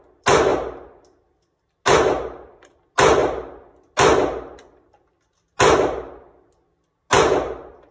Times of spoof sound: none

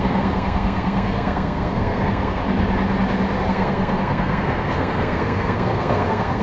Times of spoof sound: 0.0-2.4 (codec, SNAC); 3.5-6.4

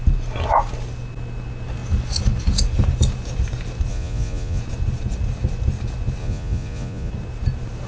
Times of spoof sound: 3.9-4.6 (vocoder, Vocos); 6.2-7.1

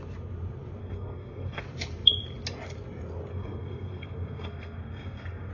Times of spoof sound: 0.8-1.6 (codec, SNAC); 3.3-5.5

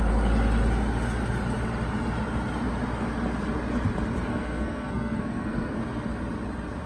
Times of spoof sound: 4.3-5.8 (codec, SNAC)

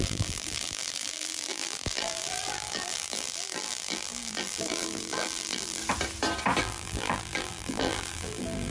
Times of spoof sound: 0.0-5.8 (vocoder, BigVGAN v2); 6.6-8.7